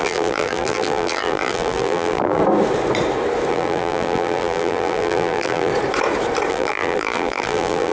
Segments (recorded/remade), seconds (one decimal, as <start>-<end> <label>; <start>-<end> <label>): 0.0-2.4 remade; 2.4-3.5 recorded; 3.5-5.7 remade; 5.7-6.5 recorded; 6.5-7.9 remade